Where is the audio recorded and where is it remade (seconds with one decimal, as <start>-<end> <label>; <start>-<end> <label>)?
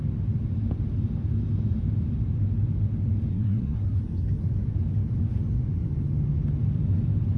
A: 0.0-3.3 recorded; 3.3-4.0 remade; 4.0-7.4 recorded